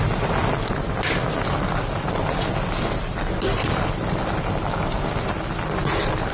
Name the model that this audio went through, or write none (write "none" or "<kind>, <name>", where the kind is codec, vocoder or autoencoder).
none